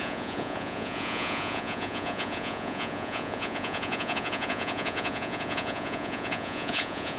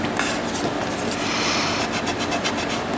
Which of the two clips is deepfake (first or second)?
first